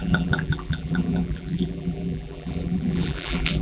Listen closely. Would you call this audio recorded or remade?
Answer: remade